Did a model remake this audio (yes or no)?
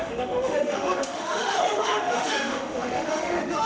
yes